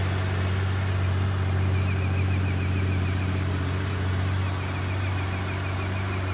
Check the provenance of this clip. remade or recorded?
recorded